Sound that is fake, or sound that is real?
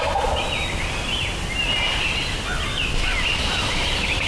real